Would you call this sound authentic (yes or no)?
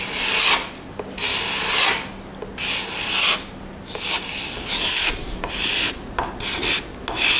yes